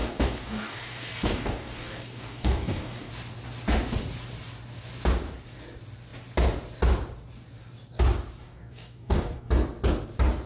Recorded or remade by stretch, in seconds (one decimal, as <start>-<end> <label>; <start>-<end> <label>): 0.0-3.1 remade; 3.1-8.4 recorded; 8.4-9.5 remade; 9.5-10.5 recorded